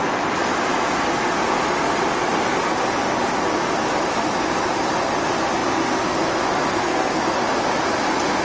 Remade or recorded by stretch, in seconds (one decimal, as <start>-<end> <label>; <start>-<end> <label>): 0.0-6.7 recorded; 6.7-7.2 remade; 7.2-8.4 recorded